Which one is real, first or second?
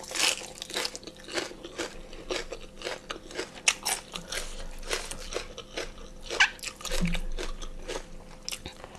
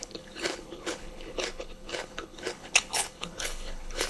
first